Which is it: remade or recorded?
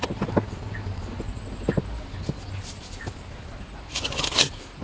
recorded